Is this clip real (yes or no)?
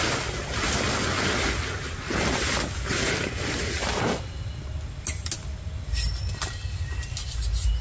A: yes